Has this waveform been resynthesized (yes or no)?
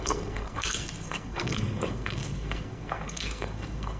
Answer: yes